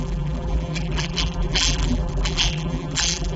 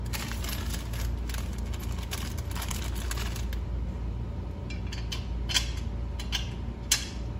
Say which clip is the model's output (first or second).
first